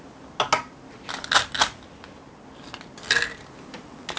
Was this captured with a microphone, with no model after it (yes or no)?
yes